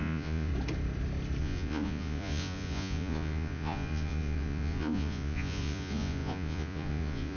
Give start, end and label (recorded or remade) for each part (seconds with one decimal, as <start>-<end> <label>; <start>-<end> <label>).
0.0-0.5 remade; 0.5-1.4 recorded; 1.4-7.4 remade

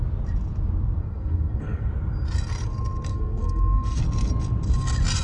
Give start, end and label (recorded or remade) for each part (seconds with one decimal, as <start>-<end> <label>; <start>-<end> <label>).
0.0-1.0 recorded; 1.0-1.9 remade; 1.9-3.1 recorded; 3.1-4.0 remade; 4.0-5.2 recorded

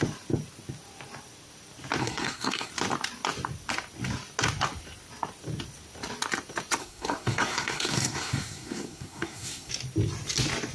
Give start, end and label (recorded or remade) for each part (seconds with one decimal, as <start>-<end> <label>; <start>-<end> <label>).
0.0-2.0 recorded; 2.0-2.7 remade; 2.7-6.8 recorded; 6.8-9.7 remade; 9.7-10.7 recorded

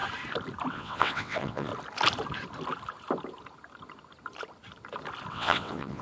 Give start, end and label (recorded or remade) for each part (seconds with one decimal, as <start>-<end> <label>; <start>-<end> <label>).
0.0-0.7 recorded; 0.7-1.7 remade; 1.7-5.3 recorded; 5.3-6.0 remade

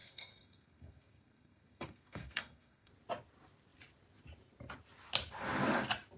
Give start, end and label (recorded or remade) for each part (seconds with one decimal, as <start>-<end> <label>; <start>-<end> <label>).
0.0-2.9 remade; 2.9-6.2 recorded